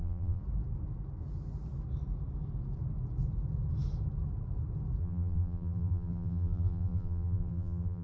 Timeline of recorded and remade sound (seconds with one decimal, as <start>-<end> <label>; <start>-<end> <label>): 0.0-0.4 remade; 0.4-5.0 recorded; 5.0-8.0 remade